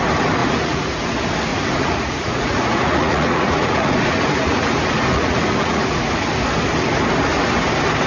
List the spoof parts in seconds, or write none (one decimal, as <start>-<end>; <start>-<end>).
0.4-1.0; 1.5-6.1